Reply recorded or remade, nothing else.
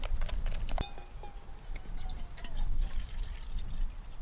recorded